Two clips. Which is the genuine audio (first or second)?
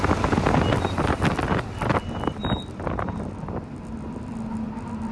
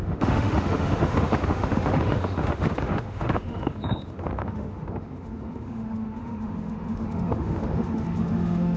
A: first